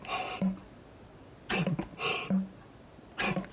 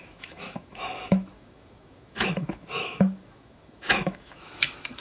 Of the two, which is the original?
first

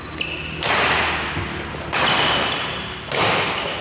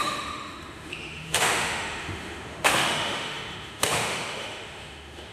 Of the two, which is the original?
first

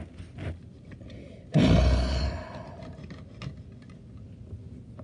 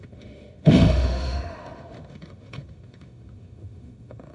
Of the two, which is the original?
first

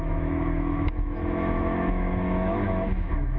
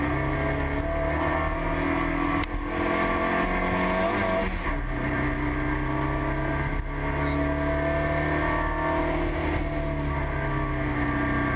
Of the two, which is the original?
second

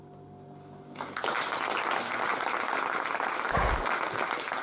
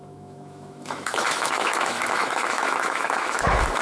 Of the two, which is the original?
first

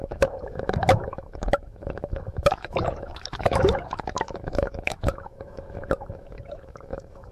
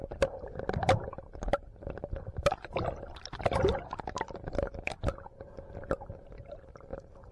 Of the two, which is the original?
second